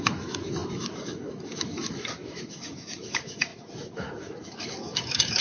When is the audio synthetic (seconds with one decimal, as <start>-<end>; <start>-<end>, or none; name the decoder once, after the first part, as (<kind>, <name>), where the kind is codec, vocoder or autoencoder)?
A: 0.0-5.4 (autoencoder, DAC-VAE)